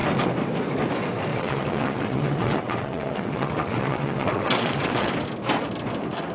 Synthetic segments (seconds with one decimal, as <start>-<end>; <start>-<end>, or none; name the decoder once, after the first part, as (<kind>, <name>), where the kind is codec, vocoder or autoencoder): 1.3-5.1 (vocoder, WaveNeXt)